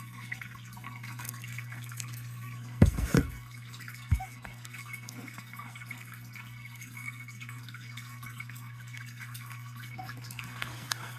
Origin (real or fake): fake